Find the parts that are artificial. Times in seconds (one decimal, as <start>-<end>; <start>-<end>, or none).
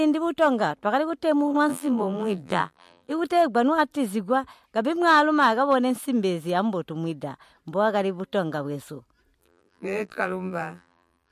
1.7-3.1; 9.4-11.3